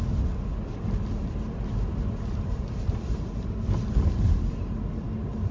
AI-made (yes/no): no